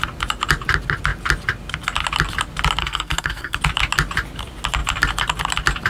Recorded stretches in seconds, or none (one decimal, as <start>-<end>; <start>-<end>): 0.0-2.8; 3.6-5.9